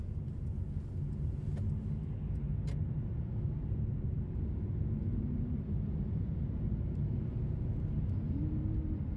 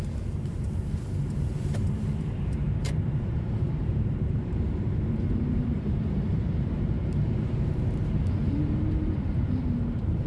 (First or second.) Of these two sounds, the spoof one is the second